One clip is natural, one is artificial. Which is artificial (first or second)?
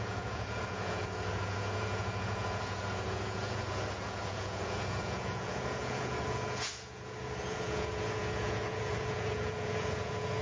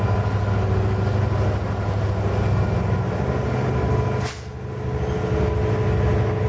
first